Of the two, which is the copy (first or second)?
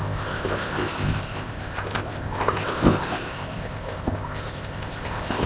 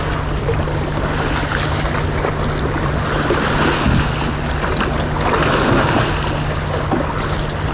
first